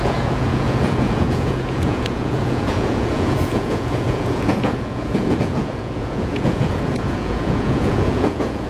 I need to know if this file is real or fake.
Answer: fake